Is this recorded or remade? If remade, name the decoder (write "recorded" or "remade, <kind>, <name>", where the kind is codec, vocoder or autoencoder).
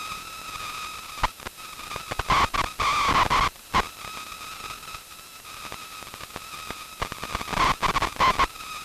recorded